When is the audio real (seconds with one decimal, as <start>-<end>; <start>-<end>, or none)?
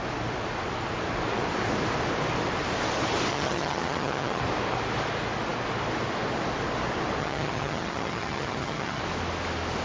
0.0-3.3; 4.4-7.2; 9.0-9.8